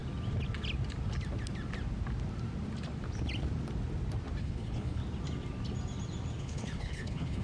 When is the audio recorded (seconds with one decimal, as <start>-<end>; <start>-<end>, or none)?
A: 0.0-4.4; 5.0-6.4